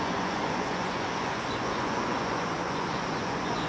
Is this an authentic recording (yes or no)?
no